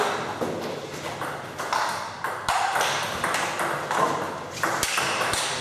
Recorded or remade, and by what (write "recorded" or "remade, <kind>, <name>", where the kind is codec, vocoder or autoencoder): recorded